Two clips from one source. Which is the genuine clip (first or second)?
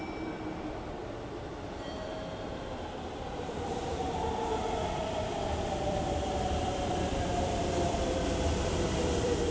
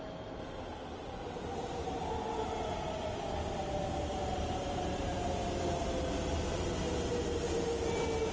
second